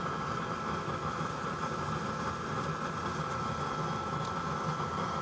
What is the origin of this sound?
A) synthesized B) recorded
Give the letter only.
B